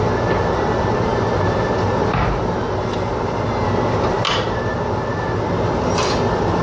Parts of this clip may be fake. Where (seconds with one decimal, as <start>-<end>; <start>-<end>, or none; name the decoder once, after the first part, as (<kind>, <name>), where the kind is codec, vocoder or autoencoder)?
none